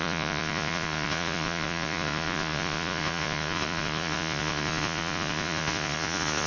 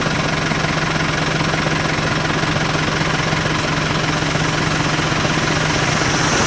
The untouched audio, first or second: second